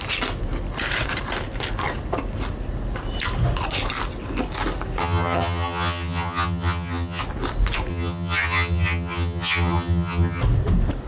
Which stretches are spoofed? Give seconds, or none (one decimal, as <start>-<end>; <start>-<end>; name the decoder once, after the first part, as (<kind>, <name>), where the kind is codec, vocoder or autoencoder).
5.0-7.2 (vocoder, HiFi-GAN); 7.9-10.4